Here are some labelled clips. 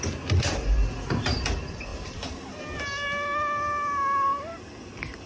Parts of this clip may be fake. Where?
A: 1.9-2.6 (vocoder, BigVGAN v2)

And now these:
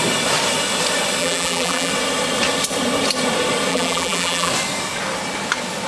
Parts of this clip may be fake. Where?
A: 1.2-1.9 (vocoder, BigVGAN v2); 3.7-4.5

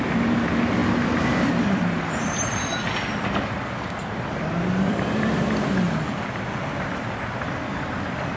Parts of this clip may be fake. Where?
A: 0.8-5.0 (vocoder, BigVGAN v2)

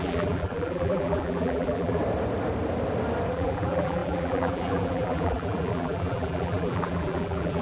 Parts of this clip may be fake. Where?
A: 0.0-2.0 (vocoder, BigVGAN v2); 3.3-7.6

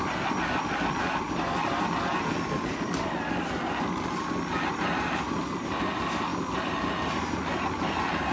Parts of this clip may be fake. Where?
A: 0.0-6.3 (vocoder, BigVGAN v2); 7.4-8.3